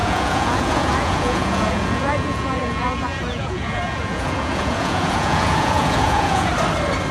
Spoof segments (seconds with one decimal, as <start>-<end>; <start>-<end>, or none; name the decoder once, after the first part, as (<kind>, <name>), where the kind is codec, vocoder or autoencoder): 0.0-6.5 (vocoder, Vocos)